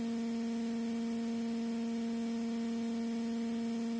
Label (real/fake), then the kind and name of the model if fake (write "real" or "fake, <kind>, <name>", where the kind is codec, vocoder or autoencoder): real